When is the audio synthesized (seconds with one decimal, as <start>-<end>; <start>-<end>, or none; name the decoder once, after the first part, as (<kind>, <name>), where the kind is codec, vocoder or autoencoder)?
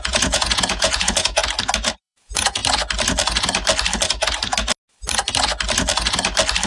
0.0-1.4 (vocoder, Vocos); 2.0-2.6